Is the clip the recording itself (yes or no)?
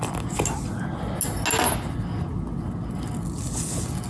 yes